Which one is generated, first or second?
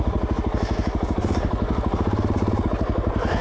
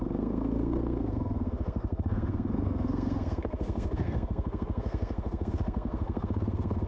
second